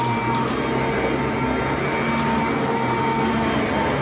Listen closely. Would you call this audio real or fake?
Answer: real